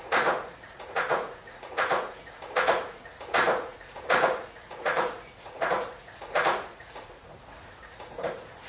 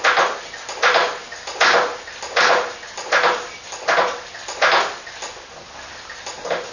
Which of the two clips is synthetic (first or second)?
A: first